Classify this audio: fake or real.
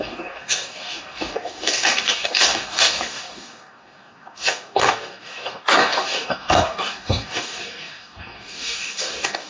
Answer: fake